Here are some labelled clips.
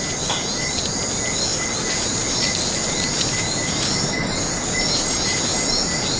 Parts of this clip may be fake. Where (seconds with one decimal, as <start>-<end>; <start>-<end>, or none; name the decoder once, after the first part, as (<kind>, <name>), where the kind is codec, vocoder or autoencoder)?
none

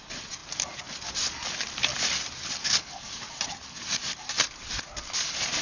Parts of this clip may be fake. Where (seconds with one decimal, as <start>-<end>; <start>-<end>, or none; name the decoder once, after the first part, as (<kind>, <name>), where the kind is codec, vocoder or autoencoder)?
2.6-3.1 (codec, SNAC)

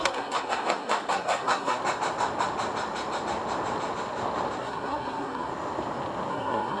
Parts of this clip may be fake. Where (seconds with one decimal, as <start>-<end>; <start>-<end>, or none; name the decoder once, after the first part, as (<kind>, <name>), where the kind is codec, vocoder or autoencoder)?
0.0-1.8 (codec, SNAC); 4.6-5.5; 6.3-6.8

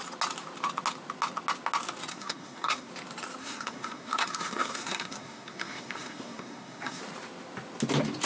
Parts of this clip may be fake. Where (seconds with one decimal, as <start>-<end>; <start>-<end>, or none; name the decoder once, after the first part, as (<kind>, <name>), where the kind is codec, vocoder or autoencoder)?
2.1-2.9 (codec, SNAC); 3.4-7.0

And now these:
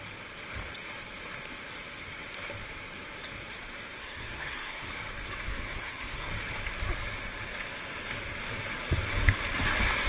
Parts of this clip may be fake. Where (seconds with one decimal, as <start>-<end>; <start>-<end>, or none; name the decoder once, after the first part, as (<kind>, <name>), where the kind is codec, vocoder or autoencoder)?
4.0-4.9 (codec, SNAC); 5.5-6.3

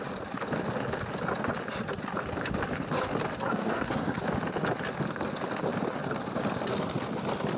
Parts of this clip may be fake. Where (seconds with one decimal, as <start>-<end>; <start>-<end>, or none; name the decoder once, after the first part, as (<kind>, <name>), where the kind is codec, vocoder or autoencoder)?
3.4-4.2 (codec, SNAC)